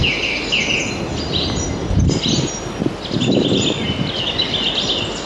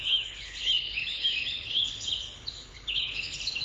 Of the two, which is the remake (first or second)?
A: second